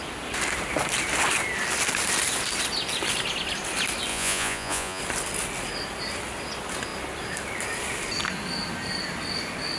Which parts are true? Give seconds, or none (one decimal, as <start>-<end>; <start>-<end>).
0.0-4.1; 5.0-9.8

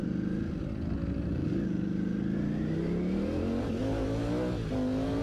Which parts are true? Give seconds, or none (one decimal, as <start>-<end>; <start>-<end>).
0.0-5.2